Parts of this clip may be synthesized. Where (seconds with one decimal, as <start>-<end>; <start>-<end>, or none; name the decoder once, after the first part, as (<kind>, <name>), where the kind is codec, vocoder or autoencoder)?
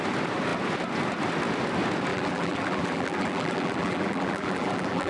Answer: 2.1-5.1 (vocoder, BigVGAN v2)